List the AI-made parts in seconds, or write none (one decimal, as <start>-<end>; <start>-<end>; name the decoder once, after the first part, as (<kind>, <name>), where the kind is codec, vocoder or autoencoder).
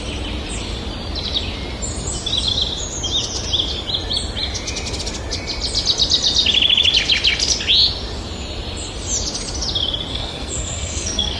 10.1-11.4 (codec, SNAC)